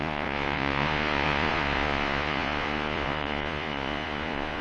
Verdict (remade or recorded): remade